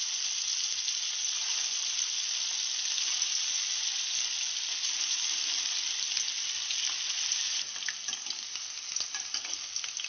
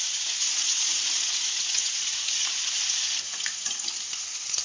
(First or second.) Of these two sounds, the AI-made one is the second